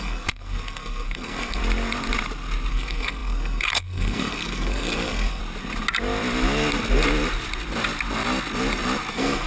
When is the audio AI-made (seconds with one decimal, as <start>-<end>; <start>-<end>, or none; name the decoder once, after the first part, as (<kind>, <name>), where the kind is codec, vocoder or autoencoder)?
0.0-1.6 (codec, SNAC); 2.7-5.4; 9.1-9.5